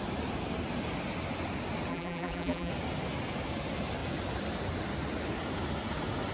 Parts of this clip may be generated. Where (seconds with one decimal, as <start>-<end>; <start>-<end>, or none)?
1.9-2.7